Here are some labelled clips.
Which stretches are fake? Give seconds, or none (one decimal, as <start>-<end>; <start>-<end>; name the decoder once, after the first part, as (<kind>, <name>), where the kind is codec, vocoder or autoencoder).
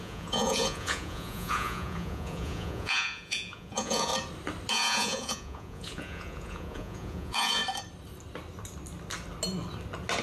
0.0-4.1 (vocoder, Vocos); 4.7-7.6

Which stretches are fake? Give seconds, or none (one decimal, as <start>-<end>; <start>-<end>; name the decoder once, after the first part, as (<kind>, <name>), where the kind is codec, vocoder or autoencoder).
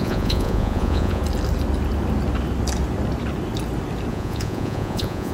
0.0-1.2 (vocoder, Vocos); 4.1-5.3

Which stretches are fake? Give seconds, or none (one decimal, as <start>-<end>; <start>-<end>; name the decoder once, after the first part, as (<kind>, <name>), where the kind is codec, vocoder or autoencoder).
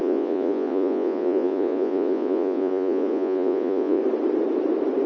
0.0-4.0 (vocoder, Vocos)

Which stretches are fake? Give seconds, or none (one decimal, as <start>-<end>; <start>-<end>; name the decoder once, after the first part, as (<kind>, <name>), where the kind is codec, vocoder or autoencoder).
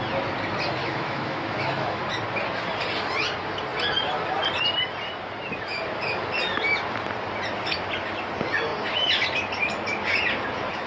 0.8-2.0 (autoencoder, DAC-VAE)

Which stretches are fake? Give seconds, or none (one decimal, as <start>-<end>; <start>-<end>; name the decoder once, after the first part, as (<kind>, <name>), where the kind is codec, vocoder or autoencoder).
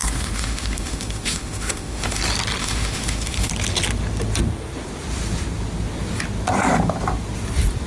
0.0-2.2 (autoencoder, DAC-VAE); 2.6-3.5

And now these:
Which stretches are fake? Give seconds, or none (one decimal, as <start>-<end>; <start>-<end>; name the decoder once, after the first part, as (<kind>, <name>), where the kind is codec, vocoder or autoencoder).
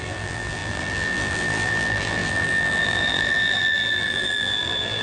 0.0-5.0 (vocoder, BigVGAN v2)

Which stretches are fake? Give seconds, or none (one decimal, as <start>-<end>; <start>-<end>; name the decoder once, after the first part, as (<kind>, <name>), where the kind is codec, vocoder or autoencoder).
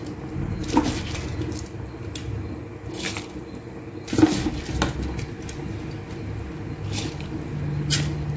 none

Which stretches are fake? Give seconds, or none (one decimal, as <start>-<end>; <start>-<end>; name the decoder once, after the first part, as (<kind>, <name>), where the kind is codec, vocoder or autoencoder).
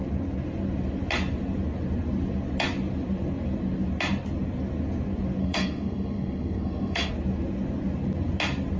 5.4-7.1 (codec, SNAC)